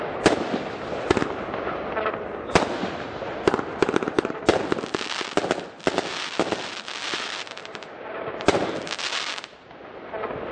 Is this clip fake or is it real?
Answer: real